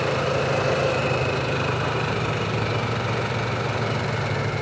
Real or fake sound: fake